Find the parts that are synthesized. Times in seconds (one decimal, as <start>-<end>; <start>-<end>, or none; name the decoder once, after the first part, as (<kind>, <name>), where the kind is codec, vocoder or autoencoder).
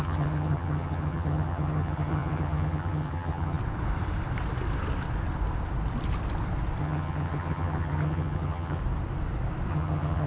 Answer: 0.0-3.6 (vocoder, HiFi-GAN); 6.8-8.8; 9.7-10.3